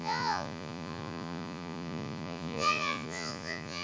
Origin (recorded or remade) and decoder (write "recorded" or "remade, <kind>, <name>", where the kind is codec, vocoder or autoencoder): remade, vocoder, Vocos